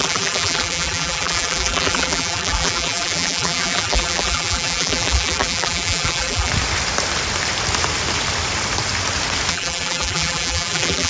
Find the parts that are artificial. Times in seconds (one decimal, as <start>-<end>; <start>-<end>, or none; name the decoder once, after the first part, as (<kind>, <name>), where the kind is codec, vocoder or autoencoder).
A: 0.0-6.5 (vocoder, BigVGAN v2); 9.5-11.1